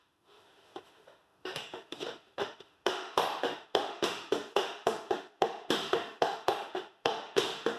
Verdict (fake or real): fake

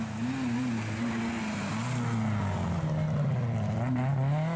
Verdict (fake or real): real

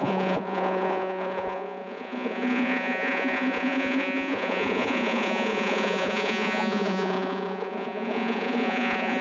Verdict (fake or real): fake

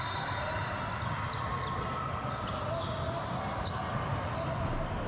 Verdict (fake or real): real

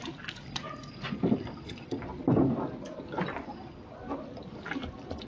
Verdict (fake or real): real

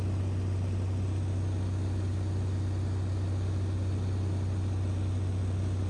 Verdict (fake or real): real